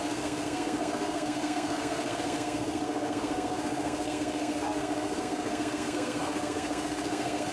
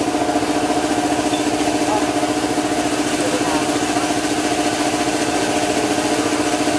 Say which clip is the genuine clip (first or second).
second